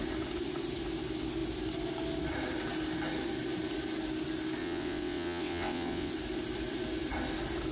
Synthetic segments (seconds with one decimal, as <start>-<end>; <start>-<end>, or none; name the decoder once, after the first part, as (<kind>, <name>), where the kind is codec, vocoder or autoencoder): 4.6-6.1 (vocoder, WaveNeXt)